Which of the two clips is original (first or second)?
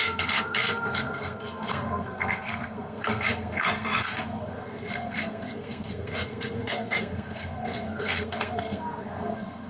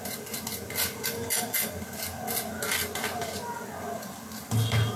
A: second